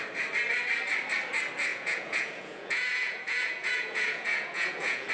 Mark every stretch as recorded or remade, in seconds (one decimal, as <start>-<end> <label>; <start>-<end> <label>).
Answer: 0.0-1.7 recorded; 1.7-5.1 remade